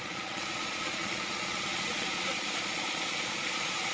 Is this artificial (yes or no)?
yes